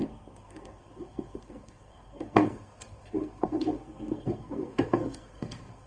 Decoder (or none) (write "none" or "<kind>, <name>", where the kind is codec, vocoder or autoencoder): codec, SNAC